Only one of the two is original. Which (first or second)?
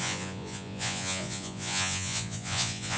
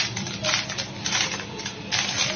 second